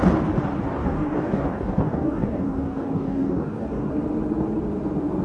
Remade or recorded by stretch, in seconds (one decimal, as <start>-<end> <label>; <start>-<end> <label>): 0.0-0.8 recorded; 0.8-3.9 remade; 3.9-5.2 recorded